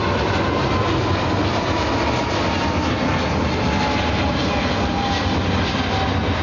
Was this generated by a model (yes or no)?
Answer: no